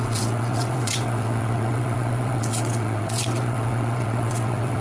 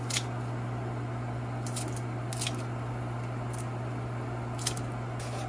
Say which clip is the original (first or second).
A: second